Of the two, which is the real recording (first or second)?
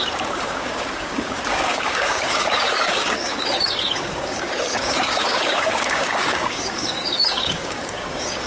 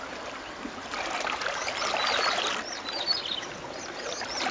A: second